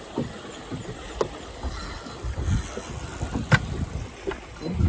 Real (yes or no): yes